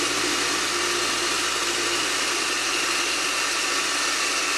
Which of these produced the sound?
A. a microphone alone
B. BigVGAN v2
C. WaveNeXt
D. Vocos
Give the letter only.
A